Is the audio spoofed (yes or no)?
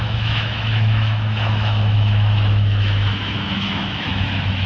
yes